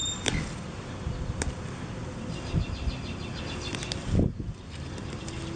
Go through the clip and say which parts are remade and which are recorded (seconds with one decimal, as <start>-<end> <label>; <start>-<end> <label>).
0.0-5.6 recorded